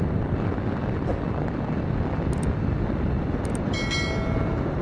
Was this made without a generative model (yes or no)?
yes